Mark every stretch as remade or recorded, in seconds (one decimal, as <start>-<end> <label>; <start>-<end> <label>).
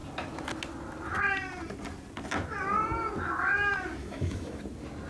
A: 0.0-4.0 recorded; 4.0-4.6 remade; 4.6-5.1 recorded